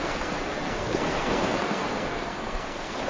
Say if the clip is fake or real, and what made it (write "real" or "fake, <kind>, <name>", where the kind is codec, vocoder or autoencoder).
fake, codec, SNAC